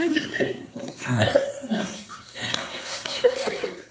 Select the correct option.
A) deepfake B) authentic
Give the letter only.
A